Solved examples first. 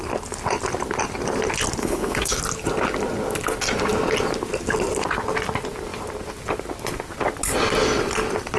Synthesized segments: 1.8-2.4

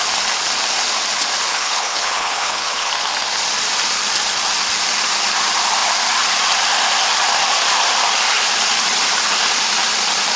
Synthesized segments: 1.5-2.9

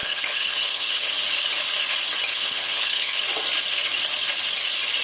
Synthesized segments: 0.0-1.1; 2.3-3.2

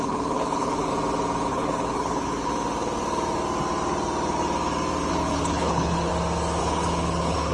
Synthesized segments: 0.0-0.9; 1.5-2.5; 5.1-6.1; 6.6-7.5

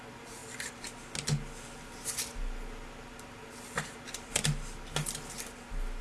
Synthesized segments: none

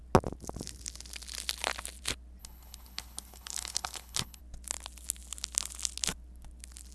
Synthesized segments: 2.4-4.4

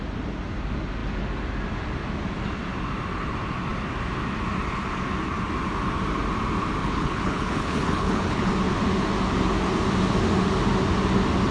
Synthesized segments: 6.8-8.5

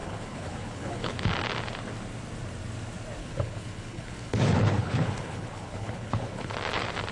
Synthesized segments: 0.0-1.3; 3.2-6.5